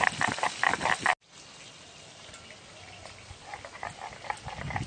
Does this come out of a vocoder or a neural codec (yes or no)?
no